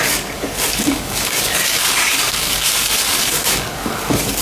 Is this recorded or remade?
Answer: remade